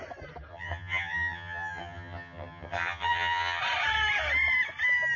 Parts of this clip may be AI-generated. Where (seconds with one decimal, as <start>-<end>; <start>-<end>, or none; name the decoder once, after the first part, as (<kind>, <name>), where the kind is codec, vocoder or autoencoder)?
0.5-3.6 (vocoder, HiFi-GAN)